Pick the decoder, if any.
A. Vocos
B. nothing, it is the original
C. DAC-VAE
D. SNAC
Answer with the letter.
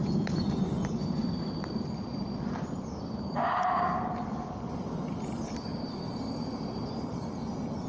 B